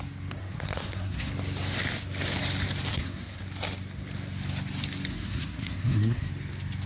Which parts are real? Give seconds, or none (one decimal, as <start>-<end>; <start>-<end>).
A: 0.0-0.4; 1.3-2.9; 3.4-5.1; 6.3-6.9